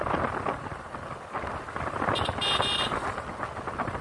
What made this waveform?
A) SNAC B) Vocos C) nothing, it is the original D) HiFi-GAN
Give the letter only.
C